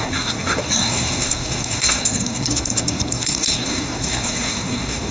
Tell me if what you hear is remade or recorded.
remade